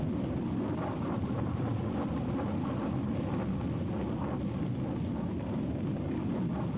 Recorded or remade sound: recorded